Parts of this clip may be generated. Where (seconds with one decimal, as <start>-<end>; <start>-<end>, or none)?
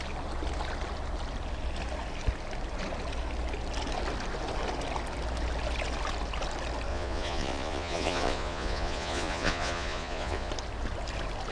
6.9-10.5